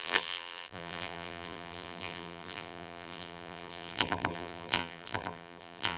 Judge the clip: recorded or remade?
remade